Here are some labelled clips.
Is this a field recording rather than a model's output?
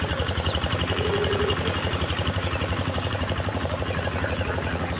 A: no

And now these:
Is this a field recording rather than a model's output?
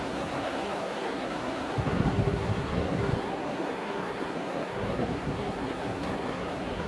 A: no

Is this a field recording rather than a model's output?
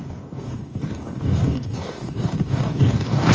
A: no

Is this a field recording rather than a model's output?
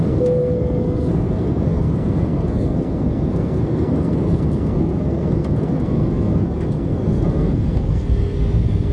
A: no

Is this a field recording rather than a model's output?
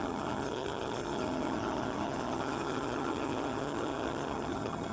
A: no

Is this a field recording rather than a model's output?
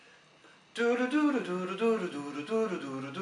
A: yes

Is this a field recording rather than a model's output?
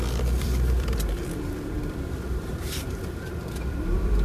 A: no